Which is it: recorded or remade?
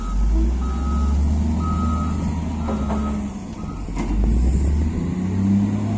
recorded